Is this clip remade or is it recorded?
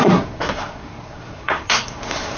remade